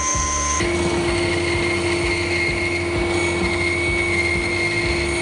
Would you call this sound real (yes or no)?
yes